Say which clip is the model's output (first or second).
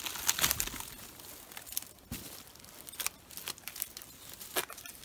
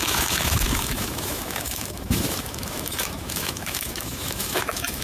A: second